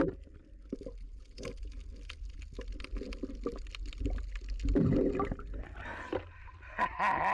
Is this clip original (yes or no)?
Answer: yes